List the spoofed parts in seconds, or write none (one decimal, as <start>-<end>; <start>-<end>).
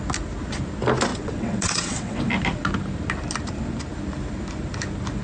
1.1-2.2